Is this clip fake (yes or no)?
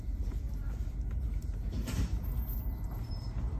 yes